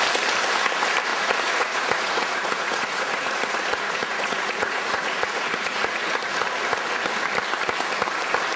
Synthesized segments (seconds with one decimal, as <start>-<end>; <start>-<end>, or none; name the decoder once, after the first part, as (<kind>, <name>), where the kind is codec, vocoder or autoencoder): 1.1-6.3 (vocoder, Vocos)